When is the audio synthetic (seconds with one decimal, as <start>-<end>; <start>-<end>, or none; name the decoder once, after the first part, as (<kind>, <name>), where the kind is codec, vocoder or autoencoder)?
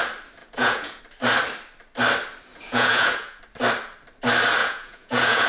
0.4-1.0 (vocoder, Vocos); 2.5-3.4; 4.6-5.5